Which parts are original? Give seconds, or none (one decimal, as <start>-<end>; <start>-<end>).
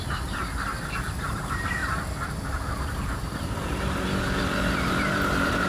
0.7-1.3; 1.8-2.8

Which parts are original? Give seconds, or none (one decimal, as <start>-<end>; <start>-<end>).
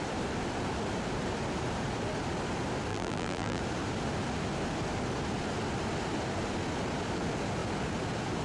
0.0-2.9; 3.6-8.4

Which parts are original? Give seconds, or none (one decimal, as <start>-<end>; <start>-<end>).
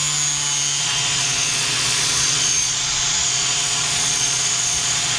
0.0-0.8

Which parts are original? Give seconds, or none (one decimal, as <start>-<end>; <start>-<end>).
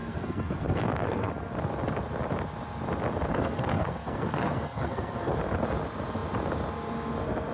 1.3-3.3; 5.3-7.5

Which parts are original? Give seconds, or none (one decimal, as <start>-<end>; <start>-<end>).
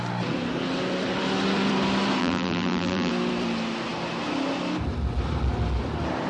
0.0-2.2; 3.1-6.3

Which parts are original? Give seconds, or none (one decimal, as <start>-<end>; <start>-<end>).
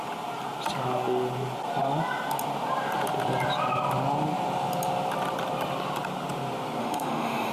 0.0-6.8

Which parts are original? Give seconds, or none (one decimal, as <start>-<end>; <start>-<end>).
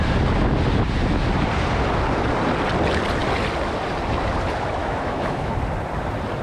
0.0-4.8; 5.5-6.4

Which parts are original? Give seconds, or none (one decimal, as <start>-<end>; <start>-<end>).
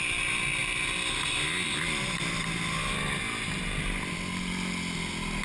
0.0-5.4